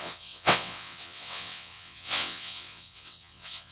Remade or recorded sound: remade